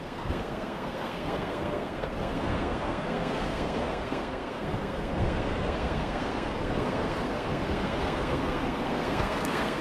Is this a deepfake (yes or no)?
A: yes